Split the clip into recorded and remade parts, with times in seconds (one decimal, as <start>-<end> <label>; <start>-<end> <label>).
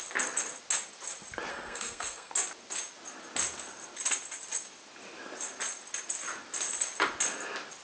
0.0-1.5 recorded; 1.5-2.3 remade; 2.3-7.8 recorded